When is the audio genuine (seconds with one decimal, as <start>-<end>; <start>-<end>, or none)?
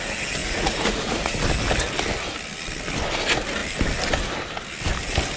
0.0-0.4; 1.4-5.4